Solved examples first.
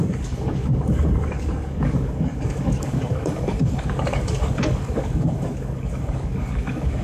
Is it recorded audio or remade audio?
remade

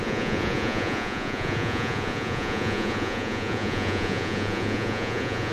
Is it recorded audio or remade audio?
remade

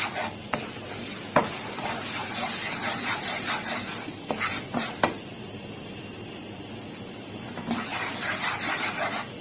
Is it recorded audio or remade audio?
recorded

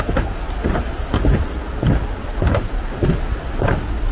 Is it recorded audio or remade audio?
recorded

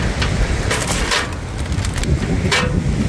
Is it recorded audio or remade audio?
recorded